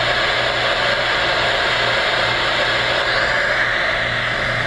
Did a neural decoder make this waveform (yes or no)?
no